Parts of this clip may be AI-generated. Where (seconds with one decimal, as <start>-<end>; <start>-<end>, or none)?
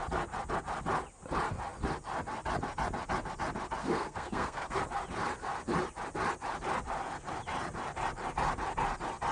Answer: 3.8-4.8